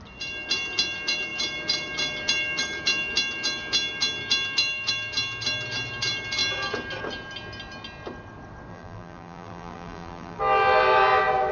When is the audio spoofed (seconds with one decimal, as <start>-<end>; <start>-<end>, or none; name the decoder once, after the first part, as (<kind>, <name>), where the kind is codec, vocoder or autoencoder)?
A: 8.7-10.4 (vocoder, BigVGAN v2)